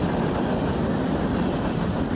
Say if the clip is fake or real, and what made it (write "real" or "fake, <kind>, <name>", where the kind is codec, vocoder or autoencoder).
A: real